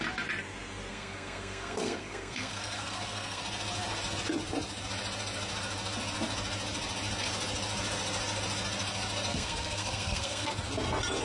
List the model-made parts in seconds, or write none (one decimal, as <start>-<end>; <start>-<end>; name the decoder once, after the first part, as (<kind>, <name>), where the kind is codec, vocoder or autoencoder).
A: 0.9-3.4 (codec, SNAC); 9.3-10.5